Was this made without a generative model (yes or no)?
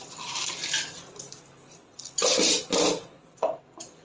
yes